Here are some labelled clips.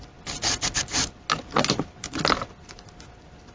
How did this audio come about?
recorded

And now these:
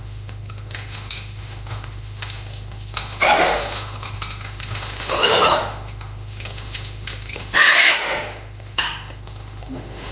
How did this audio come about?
remade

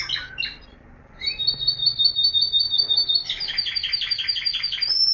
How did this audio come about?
recorded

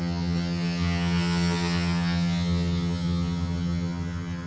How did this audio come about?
remade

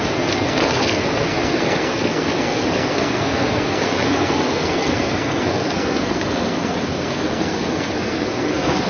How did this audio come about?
remade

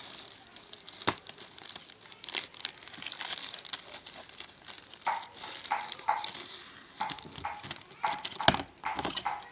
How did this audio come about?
recorded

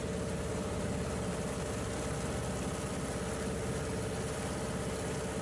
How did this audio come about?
recorded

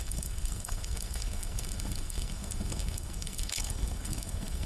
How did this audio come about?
remade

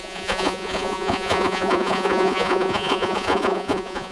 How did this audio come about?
remade